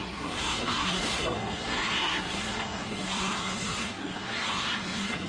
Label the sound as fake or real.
fake